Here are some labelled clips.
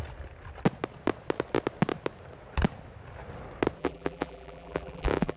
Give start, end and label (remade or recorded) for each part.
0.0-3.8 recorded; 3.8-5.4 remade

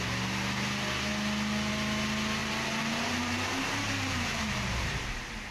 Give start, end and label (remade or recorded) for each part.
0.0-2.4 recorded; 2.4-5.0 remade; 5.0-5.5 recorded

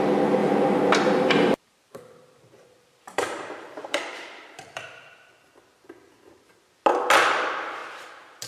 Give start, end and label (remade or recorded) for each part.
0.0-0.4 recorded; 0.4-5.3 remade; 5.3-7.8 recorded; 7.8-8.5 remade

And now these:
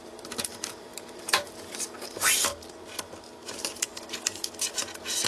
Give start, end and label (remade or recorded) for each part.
0.0-2.5 remade; 2.5-3.5 recorded; 3.5-3.9 remade; 3.9-5.3 recorded

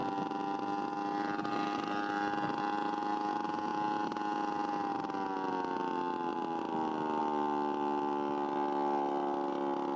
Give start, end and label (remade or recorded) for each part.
0.0-10.0 recorded

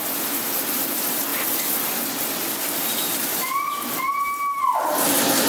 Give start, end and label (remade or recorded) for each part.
0.0-5.5 recorded

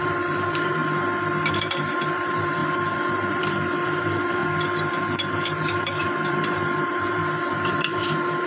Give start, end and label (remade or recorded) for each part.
0.0-0.8 remade; 0.8-1.5 recorded; 1.5-4.4 remade; 4.4-4.9 recorded; 4.9-8.5 remade